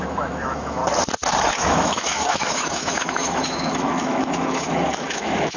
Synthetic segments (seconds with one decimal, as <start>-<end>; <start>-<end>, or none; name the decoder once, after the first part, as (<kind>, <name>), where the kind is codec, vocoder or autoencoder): 0.0-0.8 (autoencoder, DAC-VAE); 1.4-5.6